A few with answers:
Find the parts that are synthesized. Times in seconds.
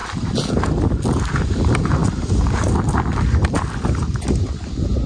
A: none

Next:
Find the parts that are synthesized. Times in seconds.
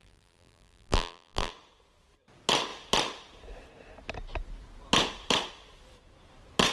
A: 0.0-1.5 (vocoder, BigVGAN v2)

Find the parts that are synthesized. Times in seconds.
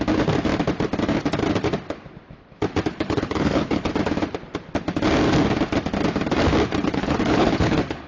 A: 2.9-3.9 (codec, HILCodec); 6.8-8.1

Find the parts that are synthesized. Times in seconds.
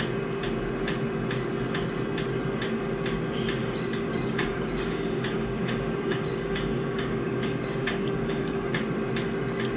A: 3.6-8.8 (codec, DAC)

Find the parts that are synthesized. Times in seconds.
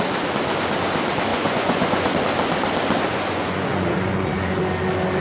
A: 1.3-2.1 (vocoder, Vocos); 3.1-4.6